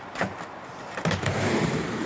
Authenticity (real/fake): real